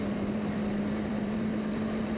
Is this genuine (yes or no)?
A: no